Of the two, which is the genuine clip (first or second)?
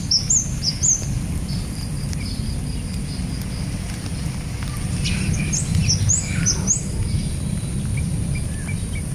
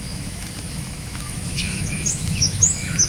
first